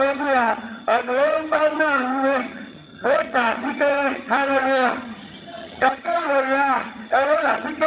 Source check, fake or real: fake